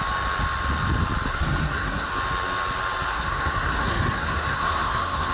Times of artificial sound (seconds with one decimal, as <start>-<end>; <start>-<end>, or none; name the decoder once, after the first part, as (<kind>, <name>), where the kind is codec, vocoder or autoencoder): 1.3-2.1 (codec, SNAC); 3.1-5.3